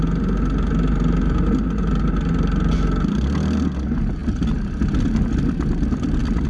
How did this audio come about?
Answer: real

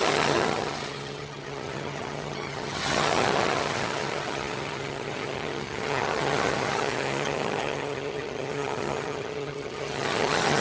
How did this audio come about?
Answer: fake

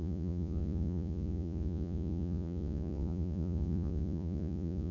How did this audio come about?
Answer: fake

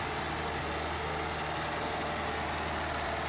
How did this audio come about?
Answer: real